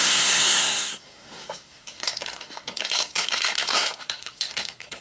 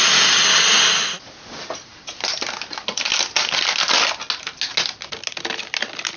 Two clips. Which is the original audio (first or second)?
second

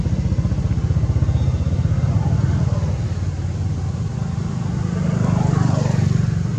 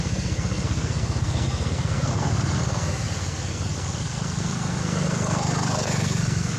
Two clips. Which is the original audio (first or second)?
first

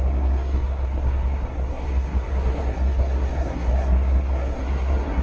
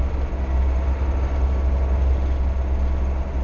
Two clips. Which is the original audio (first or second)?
second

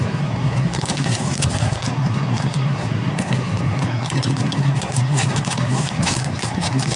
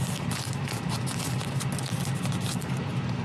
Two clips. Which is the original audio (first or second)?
second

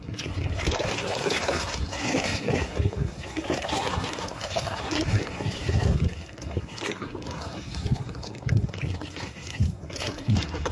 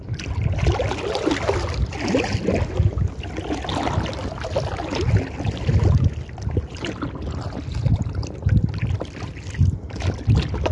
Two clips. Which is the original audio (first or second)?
second